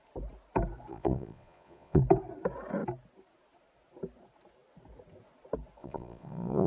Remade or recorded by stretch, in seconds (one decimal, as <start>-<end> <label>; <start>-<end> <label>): 0.0-0.9 recorded; 0.9-2.0 remade; 2.0-5.8 recorded; 5.8-6.7 remade